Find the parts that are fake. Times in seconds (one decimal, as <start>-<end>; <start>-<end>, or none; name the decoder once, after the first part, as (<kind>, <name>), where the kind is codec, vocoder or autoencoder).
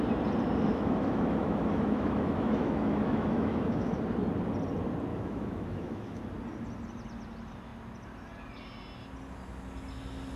0.7-3.9 (autoencoder, DAC-VAE); 5.1-6.2